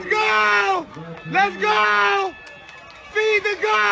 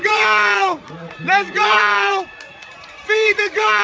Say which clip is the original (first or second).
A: first